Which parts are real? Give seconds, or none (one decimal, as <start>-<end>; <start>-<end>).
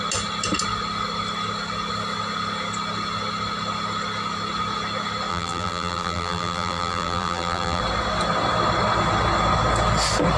0.0-5.3; 7.8-10.4